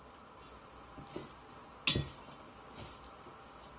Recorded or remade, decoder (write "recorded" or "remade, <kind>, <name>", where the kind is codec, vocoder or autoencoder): recorded